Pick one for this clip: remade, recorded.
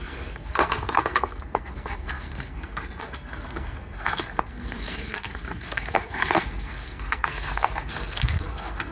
remade